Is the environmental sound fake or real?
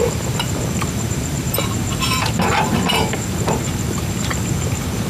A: fake